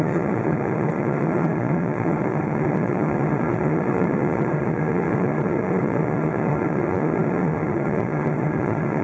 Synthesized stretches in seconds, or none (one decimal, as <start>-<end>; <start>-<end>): 0.0-9.0